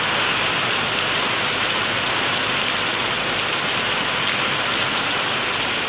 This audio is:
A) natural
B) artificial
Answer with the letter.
A